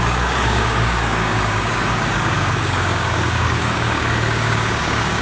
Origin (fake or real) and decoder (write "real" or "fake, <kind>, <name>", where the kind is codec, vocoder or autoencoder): fake, codec, DAC